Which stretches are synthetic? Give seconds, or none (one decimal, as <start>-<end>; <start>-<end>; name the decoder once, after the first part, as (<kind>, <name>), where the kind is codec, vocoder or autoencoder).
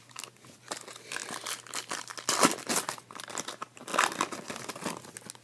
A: none